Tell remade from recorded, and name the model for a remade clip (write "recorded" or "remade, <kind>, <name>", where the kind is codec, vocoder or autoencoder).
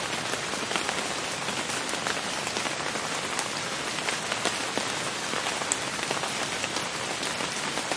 recorded